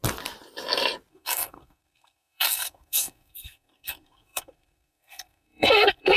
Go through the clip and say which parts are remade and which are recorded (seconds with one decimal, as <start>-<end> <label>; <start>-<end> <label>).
0.0-1.1 recorded; 1.1-6.2 remade